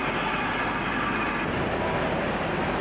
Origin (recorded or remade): recorded